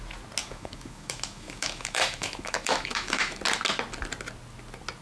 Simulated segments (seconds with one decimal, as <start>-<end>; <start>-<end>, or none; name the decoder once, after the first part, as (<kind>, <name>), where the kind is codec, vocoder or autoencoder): 0.4-3.4 (autoencoder, DAC-VAE)